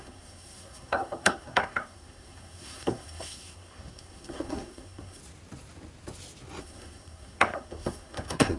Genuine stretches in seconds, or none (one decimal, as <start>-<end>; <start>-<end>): 5.2-6.6

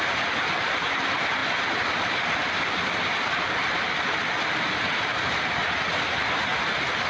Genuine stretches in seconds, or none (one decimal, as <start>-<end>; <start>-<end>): 0.0-2.4; 4.9-7.1